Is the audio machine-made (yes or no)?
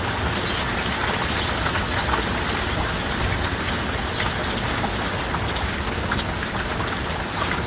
no